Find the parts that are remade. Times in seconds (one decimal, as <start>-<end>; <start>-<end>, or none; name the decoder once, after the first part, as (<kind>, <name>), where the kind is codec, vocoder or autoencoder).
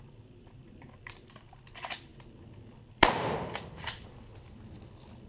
0.0-2.1 (vocoder, BigVGAN v2); 2.9-4.3; 4.8-5.3